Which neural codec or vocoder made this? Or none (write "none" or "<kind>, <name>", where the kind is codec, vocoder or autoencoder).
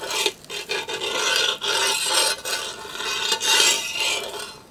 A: none